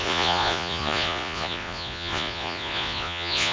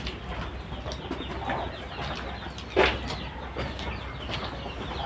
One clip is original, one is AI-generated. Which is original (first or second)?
second